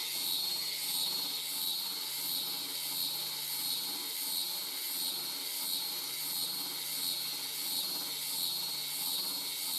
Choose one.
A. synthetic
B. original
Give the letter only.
B